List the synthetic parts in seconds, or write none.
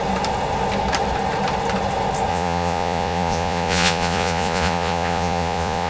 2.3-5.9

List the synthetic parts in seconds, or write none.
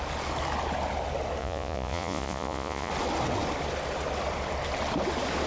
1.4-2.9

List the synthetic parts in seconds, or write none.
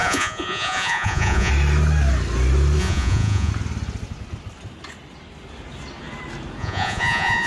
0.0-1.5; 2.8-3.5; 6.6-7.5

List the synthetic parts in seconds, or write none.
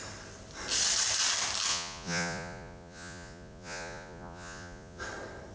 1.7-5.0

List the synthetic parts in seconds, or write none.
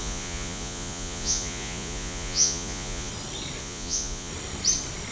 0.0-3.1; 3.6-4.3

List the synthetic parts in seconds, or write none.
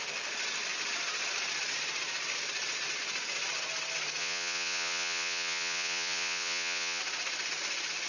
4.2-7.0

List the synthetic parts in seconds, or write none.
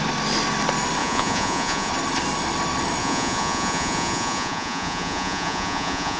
1.0-1.9; 3.0-6.2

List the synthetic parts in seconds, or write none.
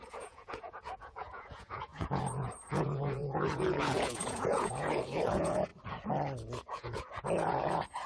0.0-5.7; 6.6-8.1